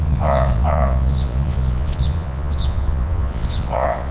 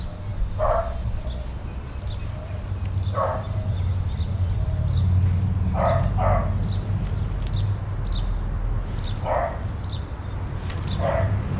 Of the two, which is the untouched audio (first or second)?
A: second